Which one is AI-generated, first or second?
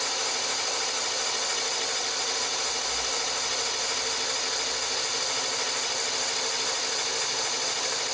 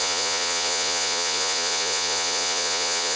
second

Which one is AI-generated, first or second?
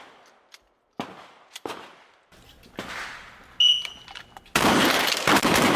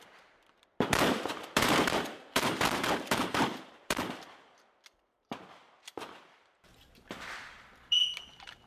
second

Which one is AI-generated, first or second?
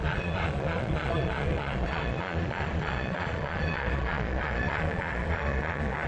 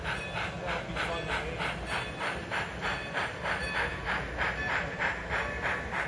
first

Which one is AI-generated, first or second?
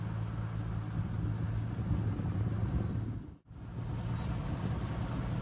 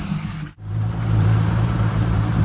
second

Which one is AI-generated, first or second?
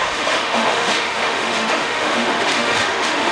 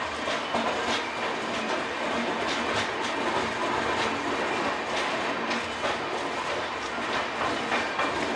first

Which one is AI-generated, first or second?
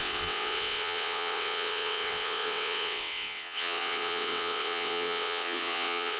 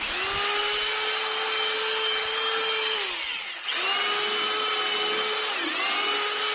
first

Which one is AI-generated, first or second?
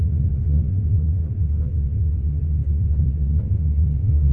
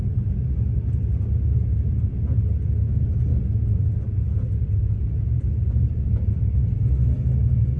first